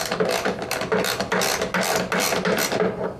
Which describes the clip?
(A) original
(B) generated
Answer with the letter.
A